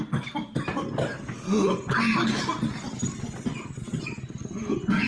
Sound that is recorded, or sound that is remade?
recorded